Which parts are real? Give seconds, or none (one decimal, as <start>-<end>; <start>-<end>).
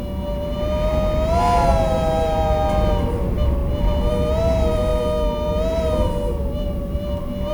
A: 0.0-7.5